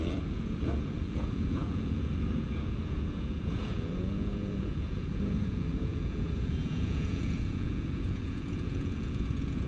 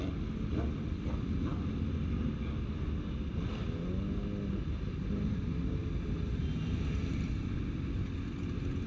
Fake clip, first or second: first